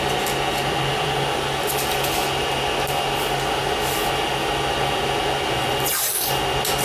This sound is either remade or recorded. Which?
recorded